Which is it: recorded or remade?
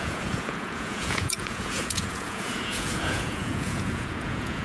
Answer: remade